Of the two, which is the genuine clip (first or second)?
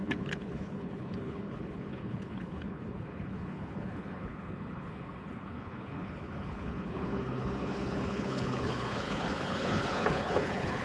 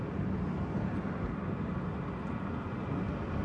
second